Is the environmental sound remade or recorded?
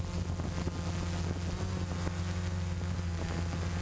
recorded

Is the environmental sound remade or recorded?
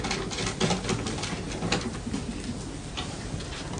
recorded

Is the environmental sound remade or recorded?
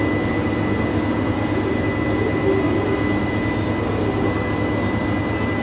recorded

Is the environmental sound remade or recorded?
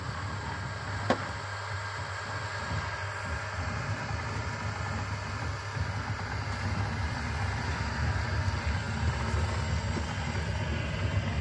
recorded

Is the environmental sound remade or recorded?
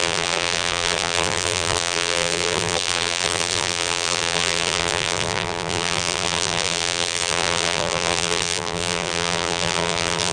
remade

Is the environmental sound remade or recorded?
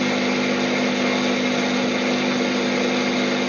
recorded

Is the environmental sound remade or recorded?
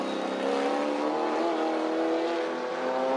recorded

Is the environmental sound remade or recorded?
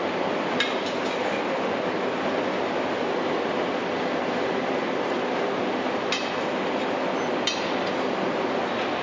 recorded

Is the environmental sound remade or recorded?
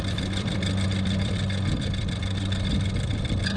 remade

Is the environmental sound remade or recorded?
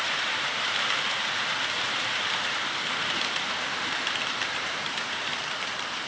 remade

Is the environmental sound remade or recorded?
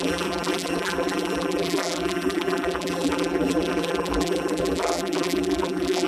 remade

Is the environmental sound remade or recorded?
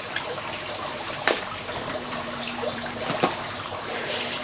remade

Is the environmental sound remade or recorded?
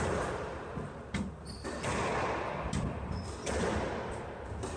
recorded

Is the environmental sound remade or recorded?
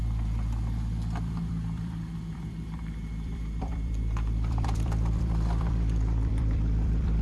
remade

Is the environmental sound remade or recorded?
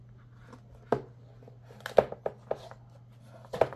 recorded